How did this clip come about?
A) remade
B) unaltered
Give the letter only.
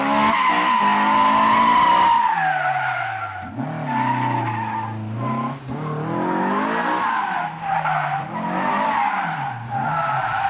B